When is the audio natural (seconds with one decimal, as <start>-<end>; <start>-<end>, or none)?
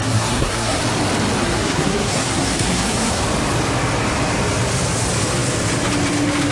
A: 0.8-1.4; 3.2-6.5